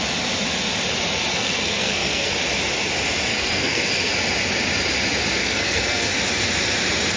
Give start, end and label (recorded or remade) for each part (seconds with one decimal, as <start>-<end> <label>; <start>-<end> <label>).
0.0-1.3 recorded; 1.3-2.3 remade; 2.3-3.3 recorded; 3.3-4.1 remade; 4.1-5.4 recorded; 5.4-6.1 remade; 6.1-7.2 recorded